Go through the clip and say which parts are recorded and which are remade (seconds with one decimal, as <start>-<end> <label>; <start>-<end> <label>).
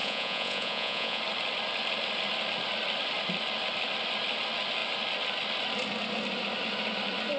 0.0-1.2 remade; 1.2-7.4 recorded